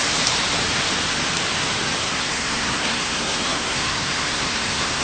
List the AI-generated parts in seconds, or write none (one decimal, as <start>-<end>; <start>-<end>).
2.0-5.0

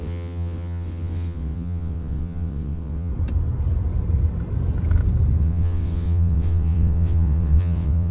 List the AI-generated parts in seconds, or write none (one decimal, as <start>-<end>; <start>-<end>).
0.0-3.1; 5.4-8.1

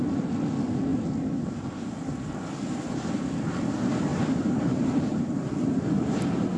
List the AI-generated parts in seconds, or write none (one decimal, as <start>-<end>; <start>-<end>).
4.1-4.8